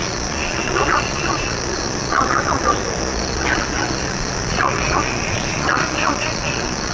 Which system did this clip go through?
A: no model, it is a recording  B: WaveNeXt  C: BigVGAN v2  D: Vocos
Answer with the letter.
D